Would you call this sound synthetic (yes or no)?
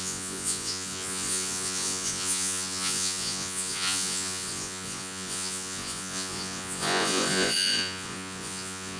yes